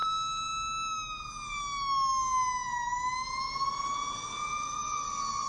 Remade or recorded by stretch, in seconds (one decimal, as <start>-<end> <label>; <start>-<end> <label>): 0.0-5.5 recorded